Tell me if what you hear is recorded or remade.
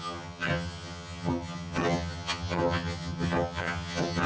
remade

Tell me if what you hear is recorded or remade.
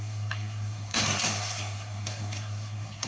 remade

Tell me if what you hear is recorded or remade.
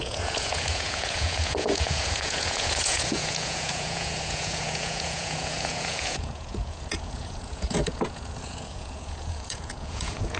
remade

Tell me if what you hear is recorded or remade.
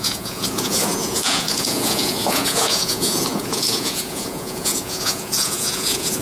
remade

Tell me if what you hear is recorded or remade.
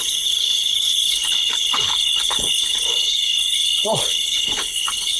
remade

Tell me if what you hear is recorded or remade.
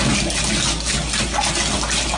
recorded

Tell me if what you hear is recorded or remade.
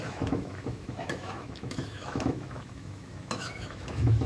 remade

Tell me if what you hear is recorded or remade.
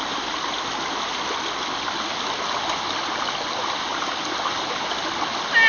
recorded